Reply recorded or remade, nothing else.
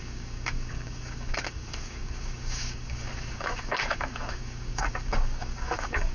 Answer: remade